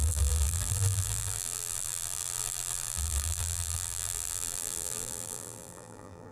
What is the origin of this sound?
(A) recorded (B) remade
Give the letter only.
B